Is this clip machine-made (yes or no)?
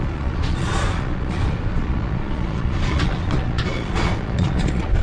yes